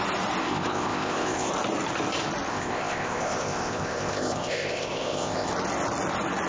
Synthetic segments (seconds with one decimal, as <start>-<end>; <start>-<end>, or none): 0.4-1.5; 2.5-5.5